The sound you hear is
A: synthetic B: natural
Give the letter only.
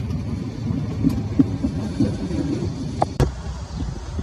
B